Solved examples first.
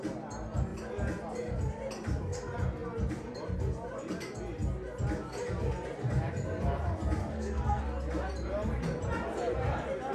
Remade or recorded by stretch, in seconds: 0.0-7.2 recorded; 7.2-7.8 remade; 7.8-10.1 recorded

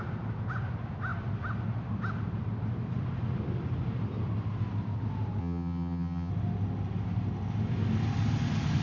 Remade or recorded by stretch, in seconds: 0.0-5.4 recorded; 5.4-6.3 remade; 6.3-8.8 recorded

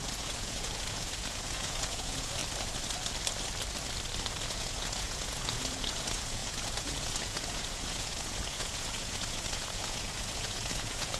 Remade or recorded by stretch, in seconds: 0.0-2.4 remade; 2.4-4.4 recorded; 4.4-11.2 remade

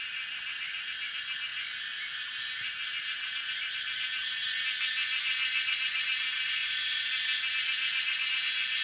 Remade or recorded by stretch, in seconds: 0.0-8.8 recorded